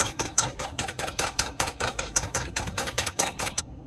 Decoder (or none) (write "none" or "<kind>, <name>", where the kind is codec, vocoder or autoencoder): codec, SNAC